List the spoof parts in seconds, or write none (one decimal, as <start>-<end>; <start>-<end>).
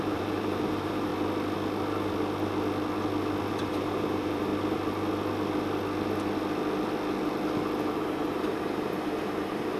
0.0-1.1; 3.5-4.5; 7.8-9.8